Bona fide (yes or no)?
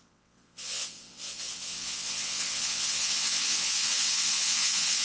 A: no